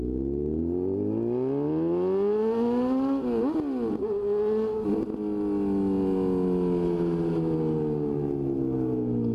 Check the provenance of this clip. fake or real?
real